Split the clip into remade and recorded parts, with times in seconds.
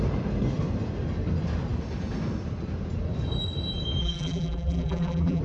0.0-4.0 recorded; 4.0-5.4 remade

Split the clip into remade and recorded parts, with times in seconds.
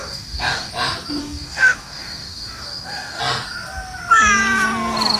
0.0-0.7 remade; 0.7-1.2 recorded; 1.2-3.2 remade; 3.2-5.2 recorded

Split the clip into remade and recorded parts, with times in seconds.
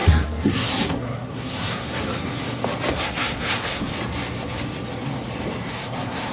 0.0-1.9 remade; 1.9-2.9 recorded; 2.9-3.9 remade; 3.9-5.7 recorded; 5.7-6.3 remade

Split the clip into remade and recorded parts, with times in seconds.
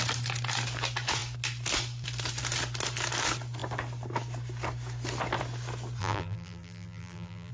0.0-6.0 recorded; 6.0-7.5 remade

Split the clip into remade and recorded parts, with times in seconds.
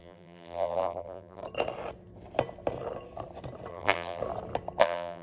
0.0-1.4 remade; 1.4-3.7 recorded; 3.7-4.2 remade; 4.2-4.8 recorded; 4.8-5.2 remade